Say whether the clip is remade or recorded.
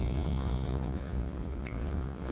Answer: remade